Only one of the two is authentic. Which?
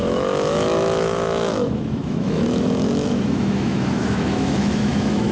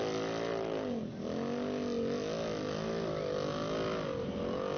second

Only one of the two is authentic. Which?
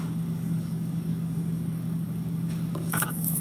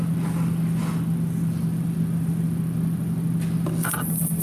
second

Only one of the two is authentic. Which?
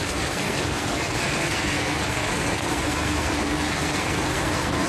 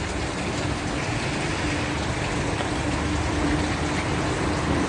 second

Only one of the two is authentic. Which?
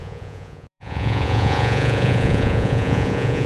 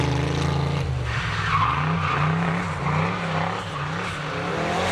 second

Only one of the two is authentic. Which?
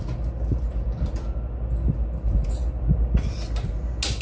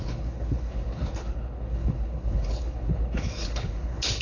first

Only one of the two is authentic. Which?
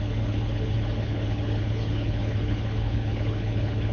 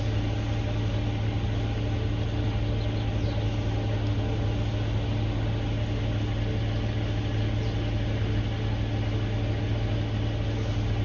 second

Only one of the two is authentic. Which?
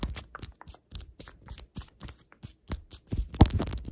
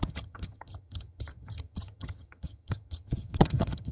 first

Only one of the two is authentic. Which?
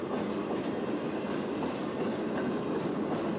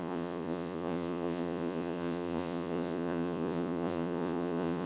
first